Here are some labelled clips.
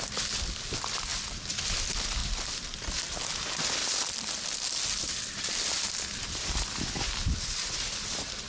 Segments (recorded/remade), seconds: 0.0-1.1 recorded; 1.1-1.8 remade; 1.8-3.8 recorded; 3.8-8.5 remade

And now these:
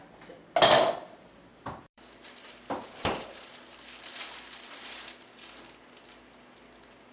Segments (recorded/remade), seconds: 0.0-1.5 recorded; 1.5-5.2 remade; 5.2-7.1 recorded

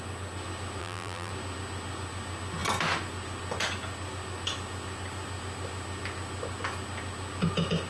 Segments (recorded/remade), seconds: 0.0-0.8 recorded; 0.8-1.3 remade; 1.3-7.9 recorded

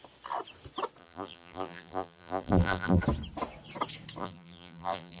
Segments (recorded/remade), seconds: 0.0-1.0 recorded; 1.0-3.0 remade; 3.0-4.2 recorded; 4.2-5.2 remade

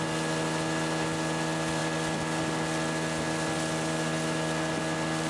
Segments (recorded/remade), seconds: 0.0-5.3 recorded